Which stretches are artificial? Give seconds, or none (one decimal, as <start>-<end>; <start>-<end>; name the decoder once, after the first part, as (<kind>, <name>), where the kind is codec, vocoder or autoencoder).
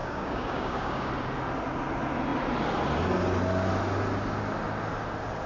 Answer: 0.0-1.1 (codec, DAC)